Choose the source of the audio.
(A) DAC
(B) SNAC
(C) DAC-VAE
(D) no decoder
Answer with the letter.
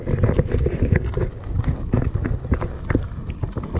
D